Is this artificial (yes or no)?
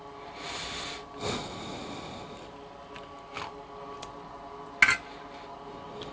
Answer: no